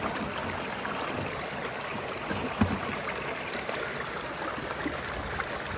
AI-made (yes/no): no